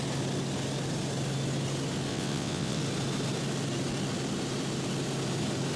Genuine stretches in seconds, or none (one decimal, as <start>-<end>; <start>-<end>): 0.0-2.1; 2.8-5.8